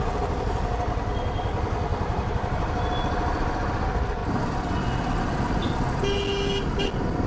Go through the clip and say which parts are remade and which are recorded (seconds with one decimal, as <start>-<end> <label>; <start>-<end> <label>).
0.0-1.9 recorded; 1.9-2.9 remade; 2.9-7.3 recorded